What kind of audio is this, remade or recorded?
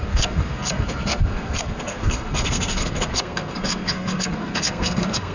remade